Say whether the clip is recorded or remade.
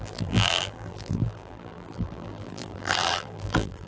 remade